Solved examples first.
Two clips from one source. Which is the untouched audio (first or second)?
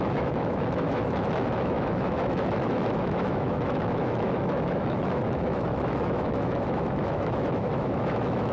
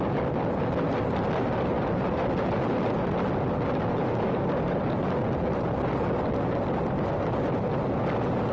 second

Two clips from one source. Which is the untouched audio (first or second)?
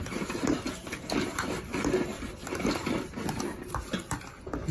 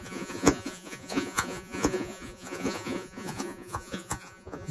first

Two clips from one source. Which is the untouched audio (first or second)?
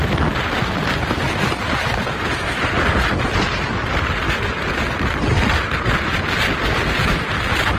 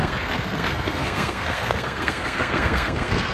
first